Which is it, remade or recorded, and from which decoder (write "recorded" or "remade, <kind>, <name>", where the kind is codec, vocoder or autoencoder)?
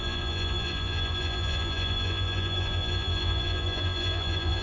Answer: remade, vocoder, Vocos